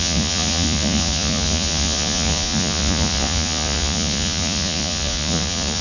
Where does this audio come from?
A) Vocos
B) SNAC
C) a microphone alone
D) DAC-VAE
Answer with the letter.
A